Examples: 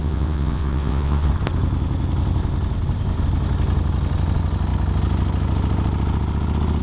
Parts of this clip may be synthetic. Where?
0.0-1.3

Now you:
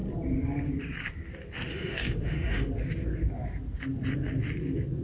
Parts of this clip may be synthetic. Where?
1.7-2.7

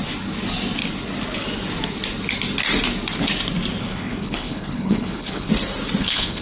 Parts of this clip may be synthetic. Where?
3.8-5.5; 6.0-6.4

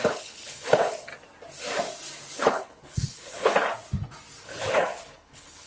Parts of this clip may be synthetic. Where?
0.0-1.1; 2.4-3.5; 4.4-5.7

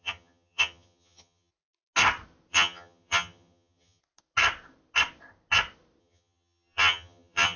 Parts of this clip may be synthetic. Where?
0.0-1.5; 2.5-4.0; 6.0-7.6

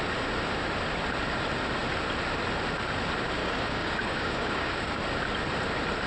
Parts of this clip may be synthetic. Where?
3.4-5.0

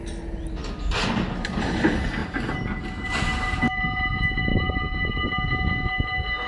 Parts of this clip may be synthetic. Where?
4.5-5.2